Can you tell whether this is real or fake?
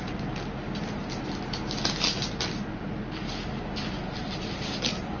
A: real